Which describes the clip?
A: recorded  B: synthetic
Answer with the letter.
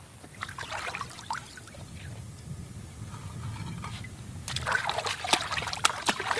A